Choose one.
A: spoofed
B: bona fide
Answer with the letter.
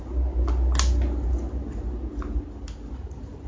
B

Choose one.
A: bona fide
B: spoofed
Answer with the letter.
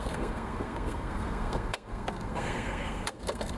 B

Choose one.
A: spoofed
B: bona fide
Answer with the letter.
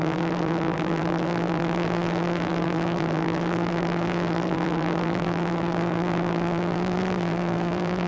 A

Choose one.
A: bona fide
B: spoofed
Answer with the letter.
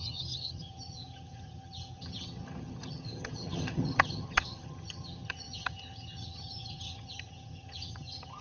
B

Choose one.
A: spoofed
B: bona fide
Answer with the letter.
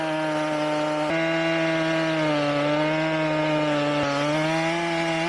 B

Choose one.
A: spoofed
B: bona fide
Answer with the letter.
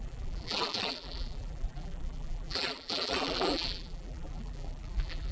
A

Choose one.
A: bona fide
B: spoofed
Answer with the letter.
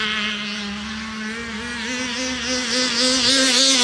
A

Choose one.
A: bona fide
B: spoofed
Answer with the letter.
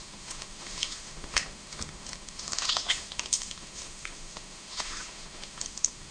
B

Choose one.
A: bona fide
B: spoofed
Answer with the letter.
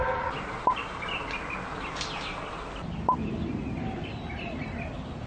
A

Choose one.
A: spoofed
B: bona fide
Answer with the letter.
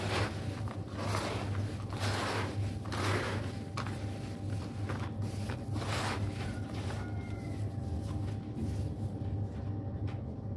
B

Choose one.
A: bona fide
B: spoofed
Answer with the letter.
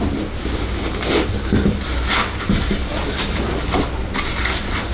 B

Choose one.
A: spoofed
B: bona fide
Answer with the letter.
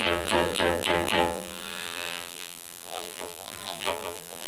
A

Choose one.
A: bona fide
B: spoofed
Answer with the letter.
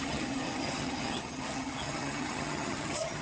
B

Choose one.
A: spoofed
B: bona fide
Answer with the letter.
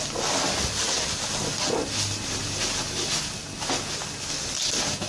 B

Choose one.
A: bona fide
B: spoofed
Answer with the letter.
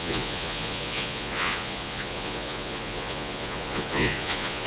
B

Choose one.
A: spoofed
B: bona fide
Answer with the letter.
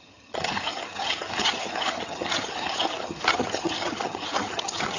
A